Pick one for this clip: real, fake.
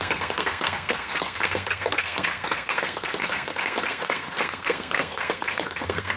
fake